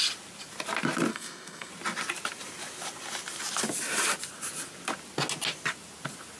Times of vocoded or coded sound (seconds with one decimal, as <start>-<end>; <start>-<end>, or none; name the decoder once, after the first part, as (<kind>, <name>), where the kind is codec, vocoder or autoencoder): 1.1-1.7 (codec, SNAC)